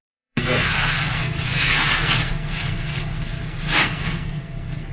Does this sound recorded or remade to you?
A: remade